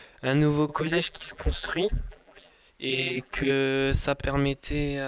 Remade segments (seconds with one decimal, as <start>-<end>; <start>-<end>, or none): 0.7-2.5; 2.9-3.5